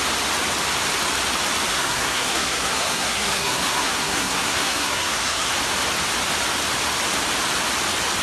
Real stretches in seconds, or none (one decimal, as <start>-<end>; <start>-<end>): 0.0-1.7; 5.5-8.2